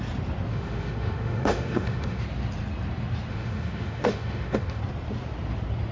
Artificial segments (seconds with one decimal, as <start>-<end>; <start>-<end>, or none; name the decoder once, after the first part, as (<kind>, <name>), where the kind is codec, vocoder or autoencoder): 0.5-2.2 (autoencoder, DAC-VAE); 3.3-4.8